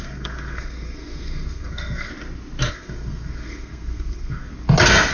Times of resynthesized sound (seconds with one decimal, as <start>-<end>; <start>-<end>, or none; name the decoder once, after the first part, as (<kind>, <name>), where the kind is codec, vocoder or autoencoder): 0.0-2.1 (codec, SNAC); 2.7-4.5